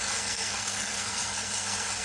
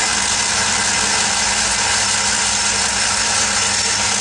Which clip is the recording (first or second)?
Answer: second